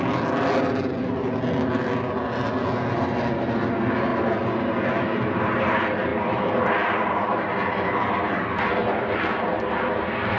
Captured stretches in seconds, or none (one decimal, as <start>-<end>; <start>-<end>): 0.0-10.4